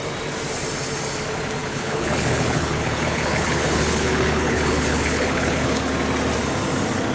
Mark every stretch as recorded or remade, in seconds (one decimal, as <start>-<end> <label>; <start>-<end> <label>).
0.0-1.6 recorded; 1.6-5.9 remade; 5.9-7.1 recorded